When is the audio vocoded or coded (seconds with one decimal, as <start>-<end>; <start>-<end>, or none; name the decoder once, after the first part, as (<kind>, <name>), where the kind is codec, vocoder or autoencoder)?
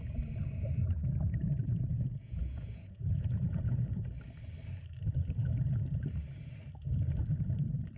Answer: 1.9-3.9 (vocoder, Vocos)